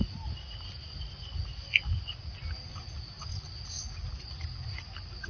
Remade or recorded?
recorded